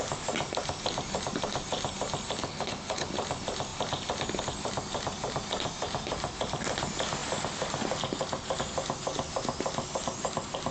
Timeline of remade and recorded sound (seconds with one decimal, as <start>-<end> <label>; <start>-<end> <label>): 0.0-2.4 recorded; 2.4-3.1 remade; 3.1-10.7 recorded

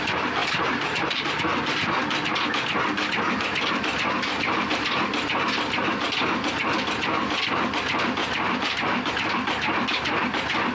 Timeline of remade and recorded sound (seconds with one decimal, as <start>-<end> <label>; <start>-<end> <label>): 0.0-0.4 recorded; 0.4-1.4 remade; 1.4-8.2 recorded; 8.2-9.1 remade; 9.1-10.7 recorded